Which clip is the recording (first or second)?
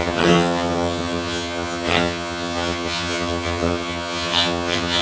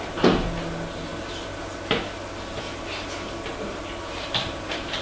second